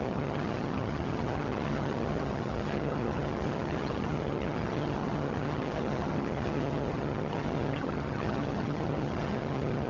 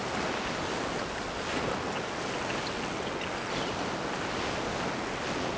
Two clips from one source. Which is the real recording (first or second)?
second